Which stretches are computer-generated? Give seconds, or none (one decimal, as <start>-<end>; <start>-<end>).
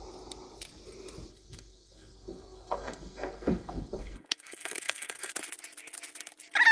1.3-5.3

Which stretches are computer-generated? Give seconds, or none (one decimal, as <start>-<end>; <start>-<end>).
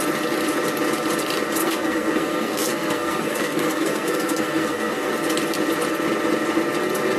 1.6-5.1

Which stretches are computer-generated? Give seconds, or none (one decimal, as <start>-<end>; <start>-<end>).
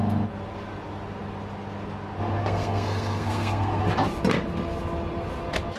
2.4-3.8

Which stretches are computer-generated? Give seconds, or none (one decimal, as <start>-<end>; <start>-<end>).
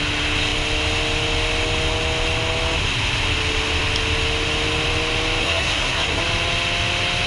5.4-6.2